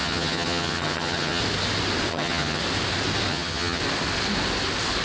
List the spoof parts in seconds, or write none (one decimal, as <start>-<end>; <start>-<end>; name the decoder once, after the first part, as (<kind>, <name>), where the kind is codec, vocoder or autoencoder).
0.0-1.4 (vocoder, HiFi-GAN); 2.1-2.6; 3.3-3.8